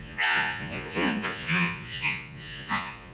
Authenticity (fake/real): fake